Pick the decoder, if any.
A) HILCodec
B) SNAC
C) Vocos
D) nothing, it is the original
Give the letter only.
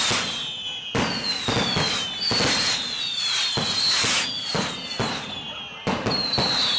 D